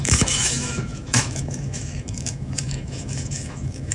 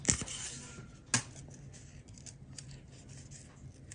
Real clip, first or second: second